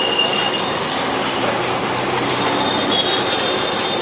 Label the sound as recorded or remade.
recorded